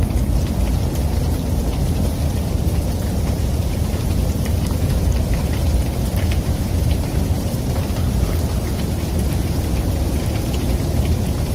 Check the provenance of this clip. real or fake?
fake